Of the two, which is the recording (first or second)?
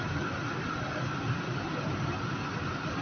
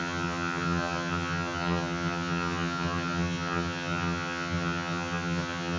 first